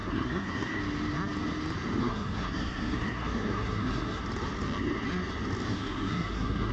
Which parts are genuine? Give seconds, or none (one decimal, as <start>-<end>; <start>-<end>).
0.8-2.0; 4.2-5.7